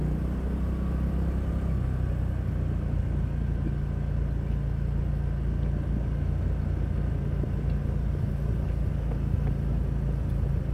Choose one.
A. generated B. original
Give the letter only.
B